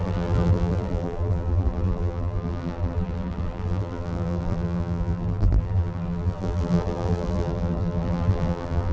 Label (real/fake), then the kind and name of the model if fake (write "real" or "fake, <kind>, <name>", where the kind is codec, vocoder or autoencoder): fake, vocoder, BigVGAN v2